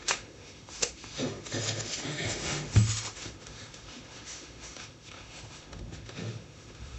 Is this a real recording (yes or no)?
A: no